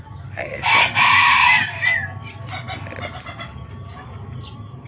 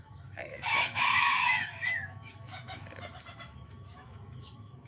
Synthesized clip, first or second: second